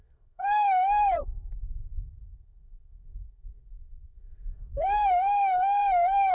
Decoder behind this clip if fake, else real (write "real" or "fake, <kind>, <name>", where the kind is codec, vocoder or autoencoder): fake, codec, SNAC